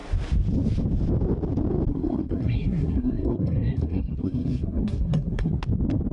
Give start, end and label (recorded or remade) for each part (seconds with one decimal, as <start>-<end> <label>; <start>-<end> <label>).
0.0-1.9 recorded; 1.9-5.6 remade; 5.6-6.1 recorded